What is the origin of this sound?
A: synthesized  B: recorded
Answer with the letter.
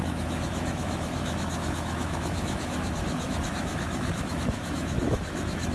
A